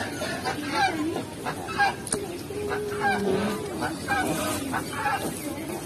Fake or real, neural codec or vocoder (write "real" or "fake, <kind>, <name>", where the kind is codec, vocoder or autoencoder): real